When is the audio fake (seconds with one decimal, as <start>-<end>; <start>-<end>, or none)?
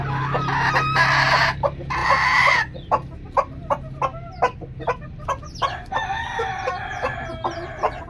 none